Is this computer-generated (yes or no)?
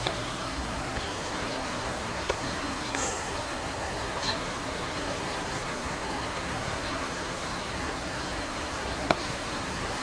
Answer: yes